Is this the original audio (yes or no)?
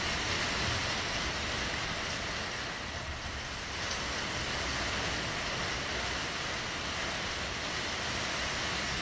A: yes